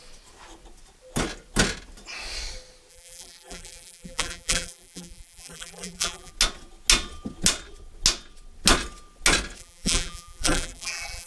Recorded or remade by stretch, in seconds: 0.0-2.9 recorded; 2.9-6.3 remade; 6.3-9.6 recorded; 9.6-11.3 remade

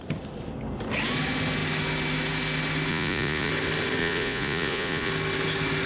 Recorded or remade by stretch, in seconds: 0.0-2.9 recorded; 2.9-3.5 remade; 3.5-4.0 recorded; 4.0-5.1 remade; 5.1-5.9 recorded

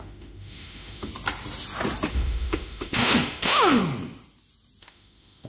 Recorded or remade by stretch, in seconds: 0.0-1.1 remade; 1.1-2.1 recorded; 2.1-3.8 remade; 3.8-4.8 recorded; 4.8-5.5 remade

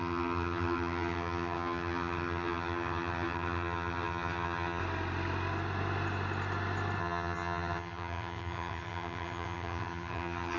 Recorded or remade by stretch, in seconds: 0.0-4.8 remade; 4.8-7.0 recorded; 7.0-10.6 remade

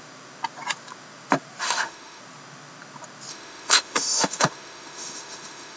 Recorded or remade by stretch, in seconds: 0.0-1.6 recorded; 1.6-2.2 remade; 2.2-3.3 recorded; 3.3-5.8 remade

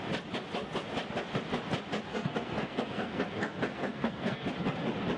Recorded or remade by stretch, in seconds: 0.0-2.1 recorded; 2.1-4.5 remade; 4.5-5.2 recorded